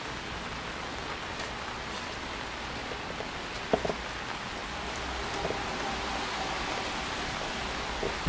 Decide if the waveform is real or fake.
real